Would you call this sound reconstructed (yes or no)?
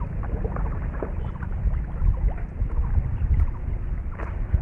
no